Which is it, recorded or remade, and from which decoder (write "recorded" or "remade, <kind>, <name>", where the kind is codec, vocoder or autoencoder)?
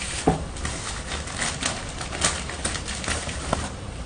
recorded